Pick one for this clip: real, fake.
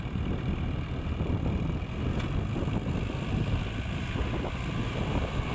fake